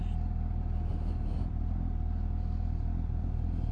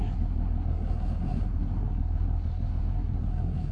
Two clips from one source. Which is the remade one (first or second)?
second